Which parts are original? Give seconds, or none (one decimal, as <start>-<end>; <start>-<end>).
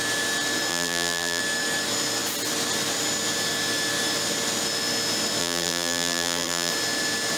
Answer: 0.0-0.7; 1.4-5.4; 6.7-7.4